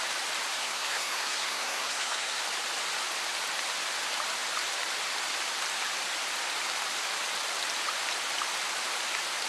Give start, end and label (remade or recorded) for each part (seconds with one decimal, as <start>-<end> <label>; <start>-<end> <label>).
0.0-0.6 recorded; 0.6-2.4 remade; 2.4-9.5 recorded